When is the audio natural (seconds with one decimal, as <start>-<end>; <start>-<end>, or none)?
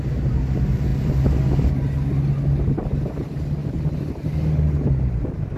0.0-3.6; 4.3-5.6